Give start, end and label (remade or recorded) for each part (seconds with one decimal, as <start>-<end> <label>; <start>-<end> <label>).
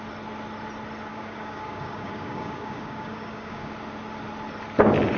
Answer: 0.0-1.1 recorded; 1.1-3.7 remade; 3.7-5.2 recorded